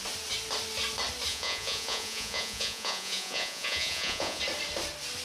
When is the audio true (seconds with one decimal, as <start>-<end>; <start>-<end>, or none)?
0.0-1.3; 4.4-5.2